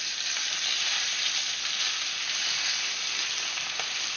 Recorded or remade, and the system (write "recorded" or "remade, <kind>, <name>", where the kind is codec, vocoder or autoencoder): recorded